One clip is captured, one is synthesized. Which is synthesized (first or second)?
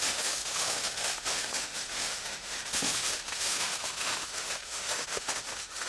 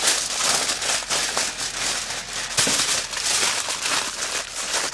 first